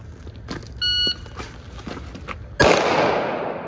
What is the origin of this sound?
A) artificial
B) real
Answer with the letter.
B